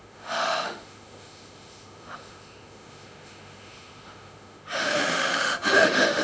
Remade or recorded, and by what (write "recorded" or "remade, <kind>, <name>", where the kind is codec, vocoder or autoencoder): remade, autoencoder, DAC-VAE